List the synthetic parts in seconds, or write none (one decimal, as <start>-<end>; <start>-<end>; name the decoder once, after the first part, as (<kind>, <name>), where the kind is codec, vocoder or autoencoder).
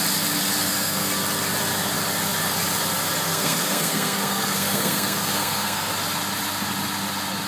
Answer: 0.6-1.1 (codec, SNAC); 3.3-5.9